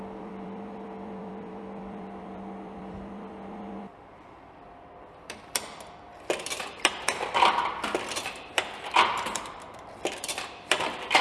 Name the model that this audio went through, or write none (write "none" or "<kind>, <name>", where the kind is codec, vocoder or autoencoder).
vocoder, BigVGAN v2